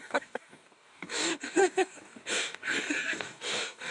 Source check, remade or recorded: remade